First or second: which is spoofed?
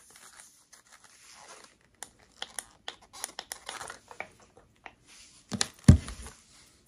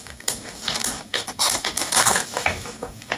second